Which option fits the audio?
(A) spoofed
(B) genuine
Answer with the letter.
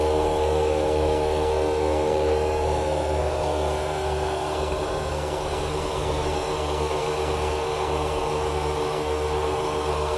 A